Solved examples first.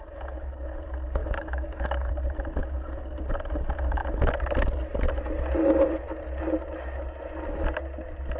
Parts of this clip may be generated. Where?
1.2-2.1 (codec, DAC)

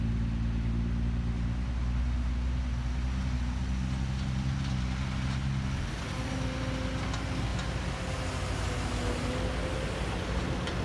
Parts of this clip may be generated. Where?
none

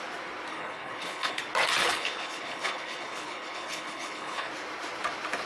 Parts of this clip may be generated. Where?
0.5-1.4 (codec, HILCodec); 1.8-4.5

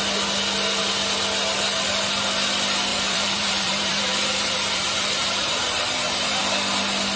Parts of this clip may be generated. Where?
2.9-6.4 (vocoder, BigVGAN v2)